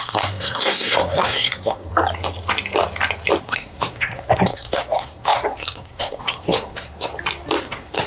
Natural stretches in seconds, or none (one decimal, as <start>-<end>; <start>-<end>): 1.9-3.4; 7.1-7.6